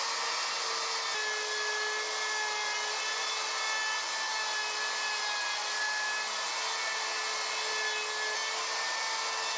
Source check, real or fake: real